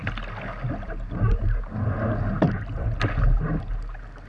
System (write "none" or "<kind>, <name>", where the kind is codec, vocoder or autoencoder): none